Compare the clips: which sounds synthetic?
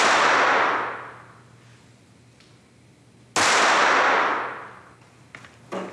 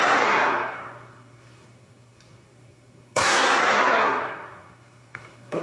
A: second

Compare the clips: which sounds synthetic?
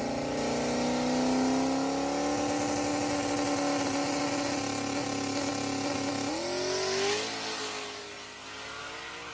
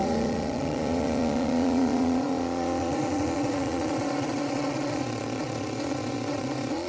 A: second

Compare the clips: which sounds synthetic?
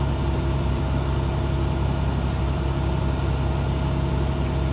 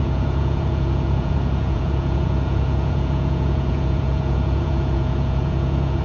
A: second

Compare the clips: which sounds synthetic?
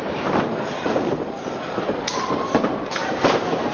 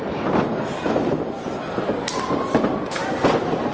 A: first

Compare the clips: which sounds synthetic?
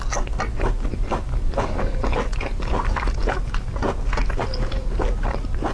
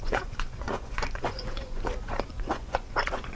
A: second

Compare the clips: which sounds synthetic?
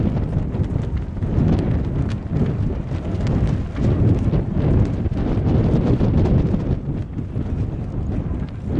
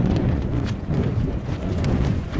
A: second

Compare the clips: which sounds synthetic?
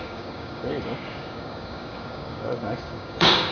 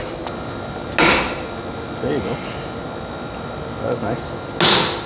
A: first